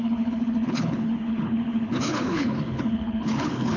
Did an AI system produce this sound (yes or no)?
yes